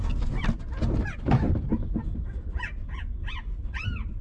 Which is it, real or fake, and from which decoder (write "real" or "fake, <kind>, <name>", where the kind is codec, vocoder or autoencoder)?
real